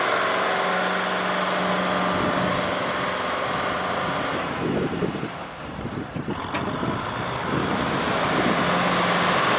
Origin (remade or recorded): recorded